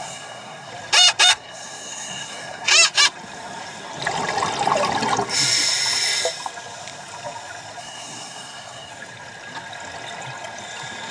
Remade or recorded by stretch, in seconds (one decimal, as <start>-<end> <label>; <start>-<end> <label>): 0.0-0.7 remade; 0.7-1.3 recorded; 1.3-2.7 remade; 2.7-7.8 recorded; 7.8-8.9 remade; 8.9-11.1 recorded